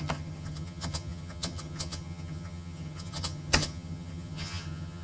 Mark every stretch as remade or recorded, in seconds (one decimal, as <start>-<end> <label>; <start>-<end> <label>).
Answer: 0.0-5.0 remade